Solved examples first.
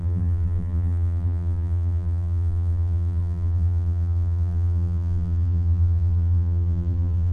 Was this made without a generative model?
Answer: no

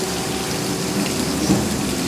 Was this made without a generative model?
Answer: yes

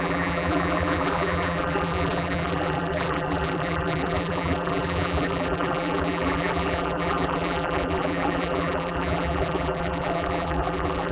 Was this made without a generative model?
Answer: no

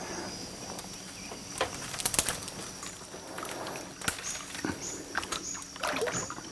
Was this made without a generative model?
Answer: yes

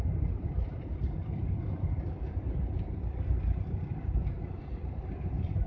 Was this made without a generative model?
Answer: no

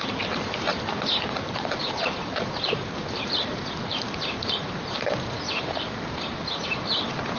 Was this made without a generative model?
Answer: no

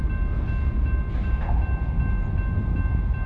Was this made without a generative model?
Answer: yes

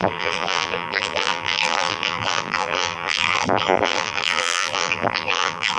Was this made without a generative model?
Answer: no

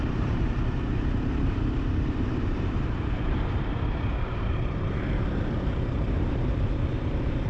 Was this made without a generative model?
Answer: no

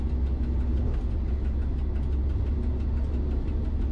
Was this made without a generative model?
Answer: yes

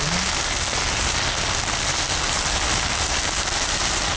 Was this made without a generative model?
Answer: yes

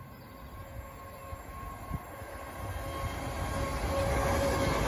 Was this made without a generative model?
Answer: yes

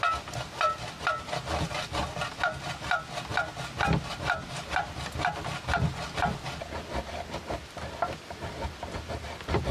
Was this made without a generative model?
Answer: yes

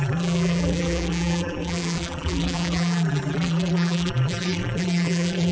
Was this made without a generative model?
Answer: no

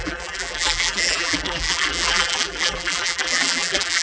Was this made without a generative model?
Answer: no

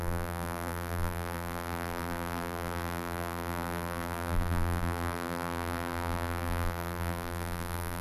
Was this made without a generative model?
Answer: no